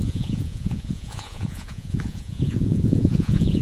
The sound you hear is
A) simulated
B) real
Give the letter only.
A